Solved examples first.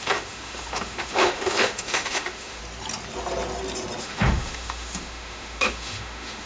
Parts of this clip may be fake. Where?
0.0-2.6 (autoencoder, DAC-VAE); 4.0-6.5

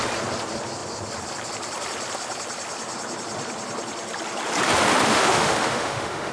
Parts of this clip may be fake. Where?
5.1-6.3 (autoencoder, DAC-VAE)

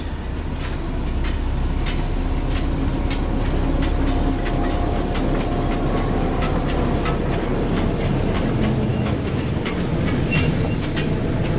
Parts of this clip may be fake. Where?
8.9-9.4 (autoencoder, DAC-VAE)

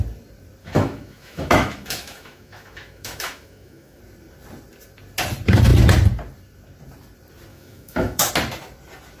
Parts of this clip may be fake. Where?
0.6-4.0 (autoencoder, DAC-VAE); 7.5-8.3